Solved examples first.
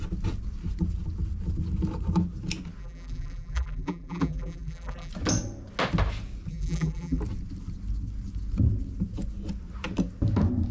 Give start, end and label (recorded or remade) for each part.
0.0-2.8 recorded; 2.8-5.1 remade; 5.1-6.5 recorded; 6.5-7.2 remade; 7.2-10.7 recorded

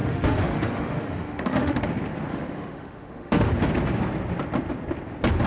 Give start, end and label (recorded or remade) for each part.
0.0-1.9 remade; 1.9-2.3 recorded; 2.3-3.5 remade; 3.5-5.5 recorded

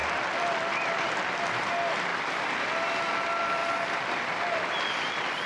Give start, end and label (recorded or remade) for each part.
0.0-0.7 remade; 0.7-2.1 recorded; 2.1-3.0 remade; 3.0-3.6 recorded; 3.6-5.5 remade

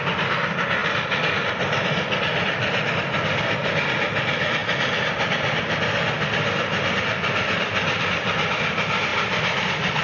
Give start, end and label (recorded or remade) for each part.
0.0-9.1 recorded; 9.1-10.0 remade

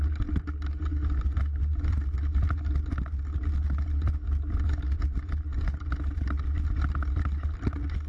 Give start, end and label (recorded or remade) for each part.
0.0-8.1 recorded